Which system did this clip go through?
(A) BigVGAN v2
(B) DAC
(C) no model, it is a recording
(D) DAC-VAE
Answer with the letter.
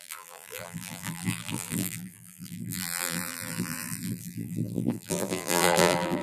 A